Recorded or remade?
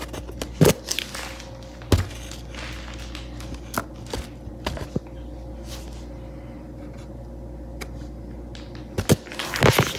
recorded